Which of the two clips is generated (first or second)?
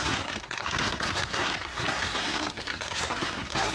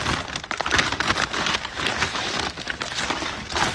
first